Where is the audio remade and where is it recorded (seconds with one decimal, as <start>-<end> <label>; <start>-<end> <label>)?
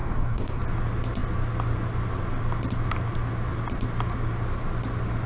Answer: 0.0-0.6 remade; 0.6-5.3 recorded